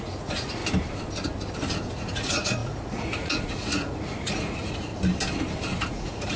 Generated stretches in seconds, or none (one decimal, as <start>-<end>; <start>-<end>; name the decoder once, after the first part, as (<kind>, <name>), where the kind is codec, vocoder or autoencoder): 0.0-0.6 (vocoder, Vocos); 1.9-4.9; 5.9-6.4